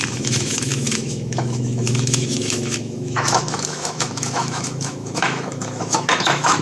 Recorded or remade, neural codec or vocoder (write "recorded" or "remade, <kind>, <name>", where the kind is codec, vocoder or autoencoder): remade, autoencoder, DAC-VAE